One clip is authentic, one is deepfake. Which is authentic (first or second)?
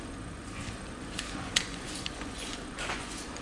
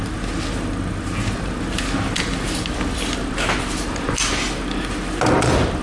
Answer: second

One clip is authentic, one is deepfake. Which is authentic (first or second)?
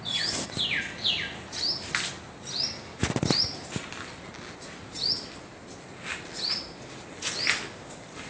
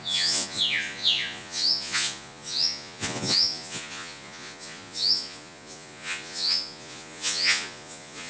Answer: first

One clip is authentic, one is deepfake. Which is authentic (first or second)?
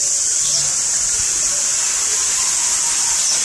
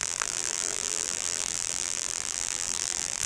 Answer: first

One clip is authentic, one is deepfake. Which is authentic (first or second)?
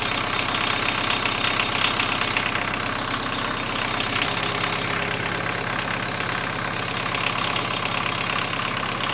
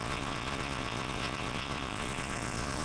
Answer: first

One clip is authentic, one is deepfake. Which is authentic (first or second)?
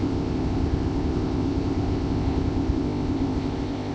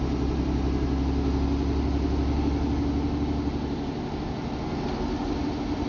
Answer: second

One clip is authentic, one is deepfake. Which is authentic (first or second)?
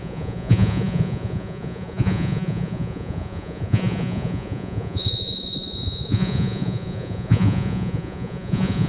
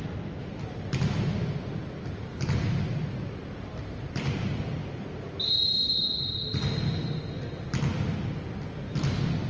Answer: second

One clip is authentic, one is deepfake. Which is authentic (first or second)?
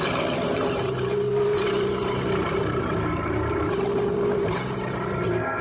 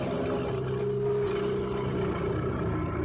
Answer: second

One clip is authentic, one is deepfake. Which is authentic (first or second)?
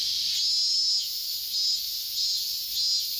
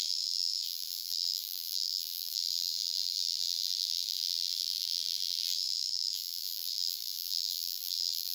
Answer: first